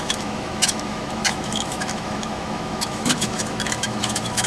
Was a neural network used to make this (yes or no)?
yes